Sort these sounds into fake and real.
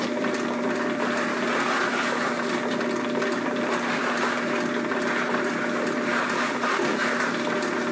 real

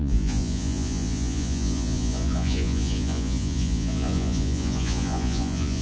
fake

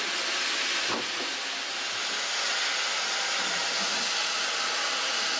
real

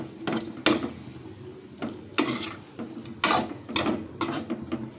real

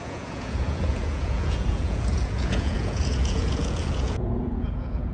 fake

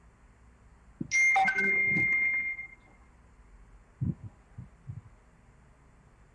real